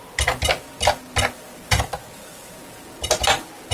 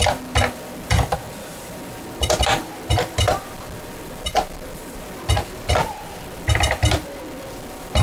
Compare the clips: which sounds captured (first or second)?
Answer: first